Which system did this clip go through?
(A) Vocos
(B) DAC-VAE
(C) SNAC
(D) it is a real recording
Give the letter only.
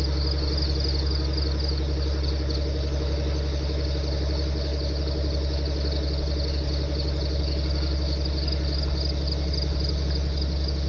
D